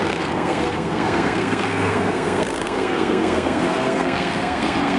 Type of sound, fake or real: fake